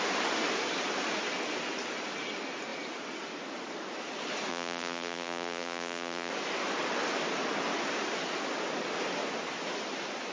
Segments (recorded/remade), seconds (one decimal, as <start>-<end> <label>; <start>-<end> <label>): 0.0-4.5 recorded; 4.5-6.3 remade; 6.3-10.3 recorded